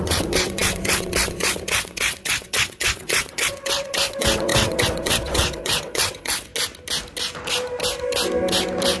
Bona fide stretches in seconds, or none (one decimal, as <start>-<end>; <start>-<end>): 6.5-9.0